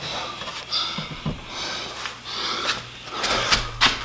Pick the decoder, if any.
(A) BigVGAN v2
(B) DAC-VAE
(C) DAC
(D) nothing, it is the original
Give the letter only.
D